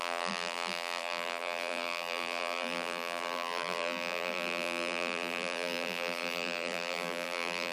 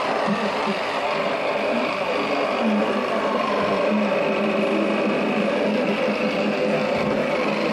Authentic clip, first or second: second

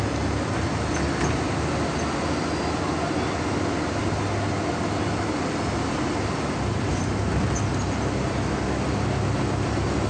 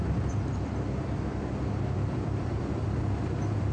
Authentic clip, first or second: first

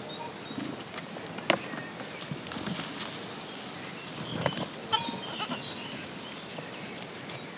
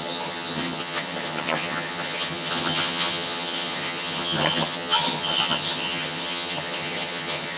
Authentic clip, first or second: first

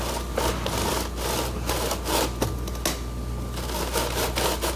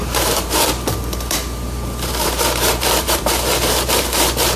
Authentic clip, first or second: first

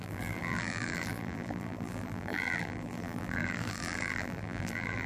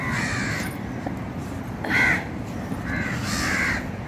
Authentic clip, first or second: second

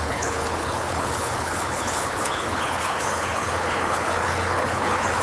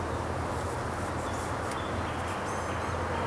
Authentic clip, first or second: second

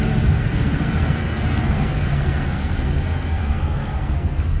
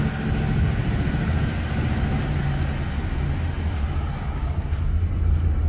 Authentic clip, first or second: second